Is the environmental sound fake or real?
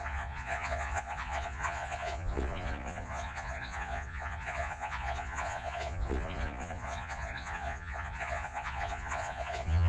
fake